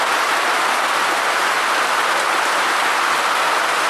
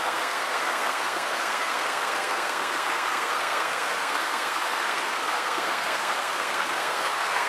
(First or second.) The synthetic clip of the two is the second